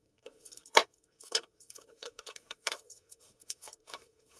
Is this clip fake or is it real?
fake